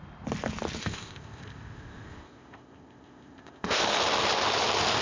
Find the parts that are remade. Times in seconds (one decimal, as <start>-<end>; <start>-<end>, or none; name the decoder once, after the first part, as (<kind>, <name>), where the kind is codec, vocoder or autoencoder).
0.8-3.8 (codec, ZipCodec)

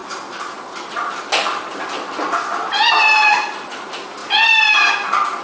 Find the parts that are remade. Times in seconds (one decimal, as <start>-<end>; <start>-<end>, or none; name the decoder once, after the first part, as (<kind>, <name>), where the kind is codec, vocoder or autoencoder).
none

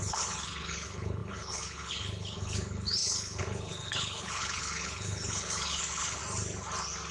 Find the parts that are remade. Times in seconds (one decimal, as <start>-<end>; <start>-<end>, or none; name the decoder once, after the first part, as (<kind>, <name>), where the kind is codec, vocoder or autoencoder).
0.0-6.2 (codec, HILCodec)

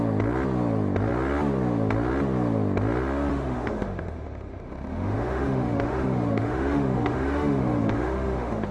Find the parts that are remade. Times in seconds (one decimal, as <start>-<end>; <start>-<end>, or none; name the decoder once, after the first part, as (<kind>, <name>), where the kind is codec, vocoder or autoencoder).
3.3-8.7 (autoencoder, DAC-VAE)